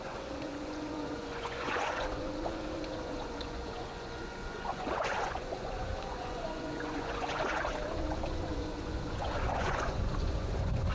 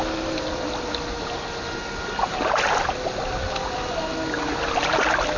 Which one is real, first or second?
second